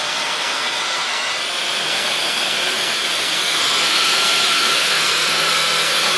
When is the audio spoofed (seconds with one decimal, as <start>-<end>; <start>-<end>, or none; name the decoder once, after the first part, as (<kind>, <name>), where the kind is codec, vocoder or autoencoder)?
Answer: 0.0-1.3 (codec, SNAC); 1.8-6.2